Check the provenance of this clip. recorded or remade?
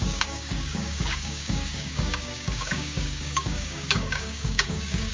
remade